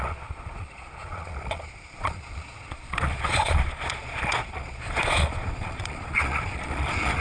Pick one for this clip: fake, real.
fake